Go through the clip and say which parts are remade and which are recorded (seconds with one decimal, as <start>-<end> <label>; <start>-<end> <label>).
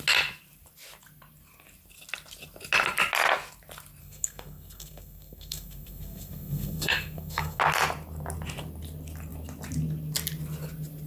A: 0.0-4.0 recorded; 4.0-7.6 remade; 7.6-11.1 recorded